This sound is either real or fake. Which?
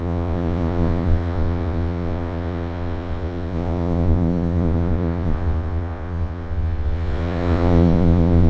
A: fake